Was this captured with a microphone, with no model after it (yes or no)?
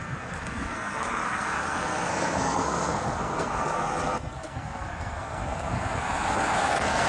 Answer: no